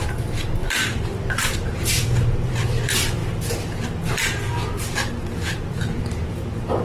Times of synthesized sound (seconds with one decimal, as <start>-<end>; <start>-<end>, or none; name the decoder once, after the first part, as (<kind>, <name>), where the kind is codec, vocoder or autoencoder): 0.6-2.8 (vocoder, BigVGAN v2); 3.2-6.0